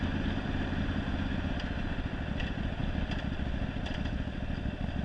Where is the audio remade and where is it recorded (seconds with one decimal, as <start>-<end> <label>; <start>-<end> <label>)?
0.0-5.0 recorded